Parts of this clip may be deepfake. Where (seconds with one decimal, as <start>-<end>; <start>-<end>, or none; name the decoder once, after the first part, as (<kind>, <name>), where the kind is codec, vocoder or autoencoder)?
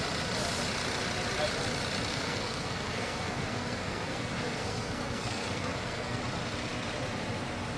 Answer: 2.1-6.2 (codec, SNAC)